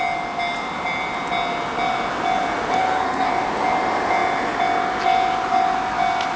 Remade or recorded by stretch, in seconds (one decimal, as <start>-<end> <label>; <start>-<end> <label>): 0.0-2.8 recorded; 2.8-3.3 remade; 3.3-6.4 recorded